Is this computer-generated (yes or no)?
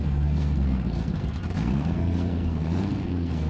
yes